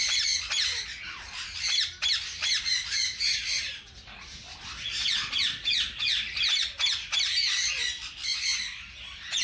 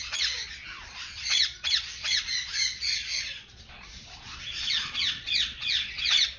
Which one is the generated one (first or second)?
second